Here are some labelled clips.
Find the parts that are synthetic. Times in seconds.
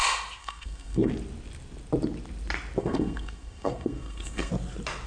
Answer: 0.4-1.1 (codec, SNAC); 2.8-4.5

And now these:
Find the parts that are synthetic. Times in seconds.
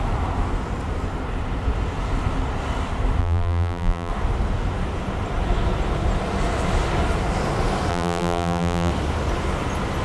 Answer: 3.2-4.1 (vocoder, BigVGAN v2); 7.9-8.9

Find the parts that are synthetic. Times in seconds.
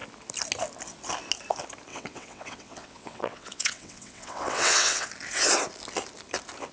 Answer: 1.9-5.1 (vocoder, WaveNeXt)